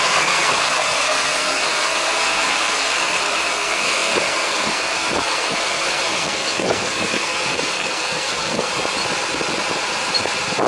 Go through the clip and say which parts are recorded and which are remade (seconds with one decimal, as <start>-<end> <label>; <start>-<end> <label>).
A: 0.0-8.7 remade; 8.7-10.7 recorded